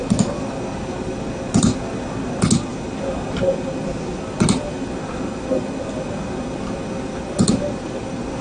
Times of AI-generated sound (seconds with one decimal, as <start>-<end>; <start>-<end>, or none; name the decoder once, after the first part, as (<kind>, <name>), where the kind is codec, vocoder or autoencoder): none